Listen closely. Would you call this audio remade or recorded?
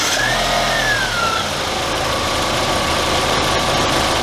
recorded